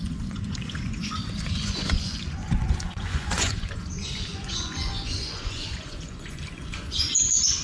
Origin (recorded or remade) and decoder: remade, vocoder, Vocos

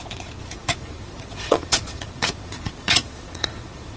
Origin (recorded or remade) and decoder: remade, vocoder, Vocos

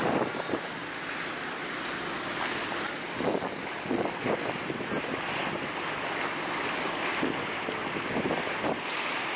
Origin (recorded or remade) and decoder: recorded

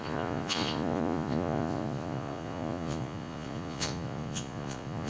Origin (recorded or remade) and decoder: remade, vocoder, Vocos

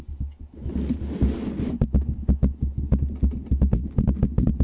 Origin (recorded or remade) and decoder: recorded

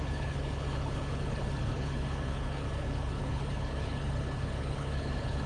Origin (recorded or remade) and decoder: remade, codec, HILCodec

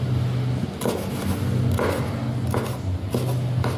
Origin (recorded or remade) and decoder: recorded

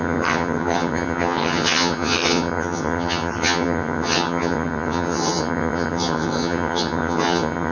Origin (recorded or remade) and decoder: remade, vocoder, HiFi-GAN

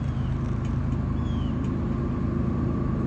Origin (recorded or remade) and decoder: recorded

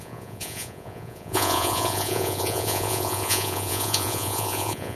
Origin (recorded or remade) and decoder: remade, vocoder, Vocos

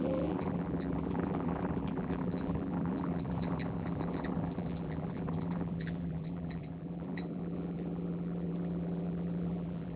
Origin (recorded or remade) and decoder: remade, vocoder, BigVGAN v2